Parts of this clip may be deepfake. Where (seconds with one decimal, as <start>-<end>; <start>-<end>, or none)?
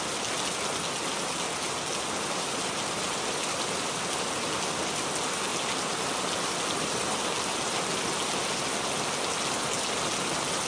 none